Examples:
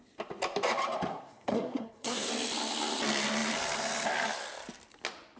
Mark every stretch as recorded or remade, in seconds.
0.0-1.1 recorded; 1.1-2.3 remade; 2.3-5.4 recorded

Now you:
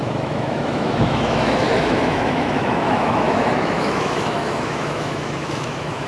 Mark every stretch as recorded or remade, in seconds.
0.0-6.1 remade

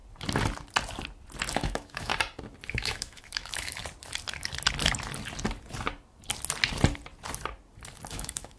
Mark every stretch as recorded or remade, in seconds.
0.0-1.5 recorded; 1.5-2.1 remade; 2.1-2.7 recorded; 2.7-3.8 remade; 3.8-8.1 recorded; 8.1-8.6 remade

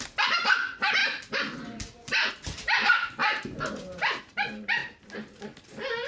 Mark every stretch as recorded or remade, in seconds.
0.0-1.0 remade; 1.0-2.3 recorded; 2.3-6.1 remade